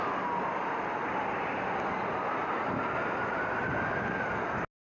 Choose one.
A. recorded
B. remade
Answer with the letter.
A